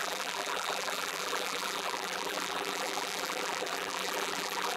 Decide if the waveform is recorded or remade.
remade